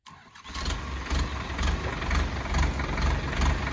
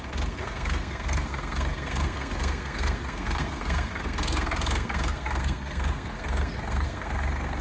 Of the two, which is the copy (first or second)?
second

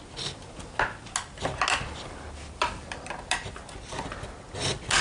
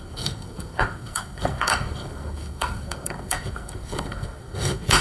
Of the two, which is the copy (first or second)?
second